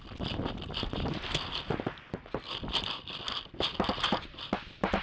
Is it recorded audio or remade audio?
recorded